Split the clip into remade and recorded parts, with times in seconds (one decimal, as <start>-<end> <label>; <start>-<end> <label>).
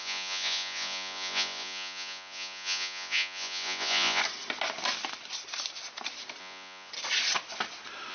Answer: 0.0-4.2 remade; 4.2-6.4 recorded; 6.4-6.9 remade; 6.9-8.1 recorded